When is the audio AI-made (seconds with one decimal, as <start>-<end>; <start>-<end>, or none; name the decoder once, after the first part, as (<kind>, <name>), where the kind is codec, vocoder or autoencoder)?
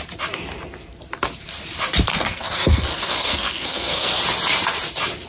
2.1-4.2 (codec, SNAC)